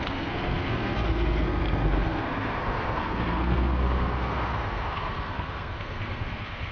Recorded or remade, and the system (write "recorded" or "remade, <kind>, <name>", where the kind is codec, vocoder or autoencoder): remade, codec, SNAC